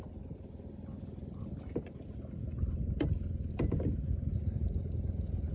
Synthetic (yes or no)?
no